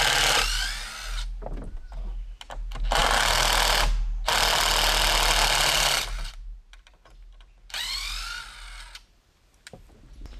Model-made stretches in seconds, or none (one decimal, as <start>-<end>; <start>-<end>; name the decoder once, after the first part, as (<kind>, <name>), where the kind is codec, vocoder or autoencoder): none